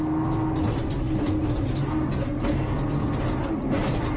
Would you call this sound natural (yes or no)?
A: yes